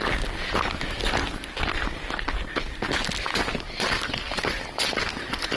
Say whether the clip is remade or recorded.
recorded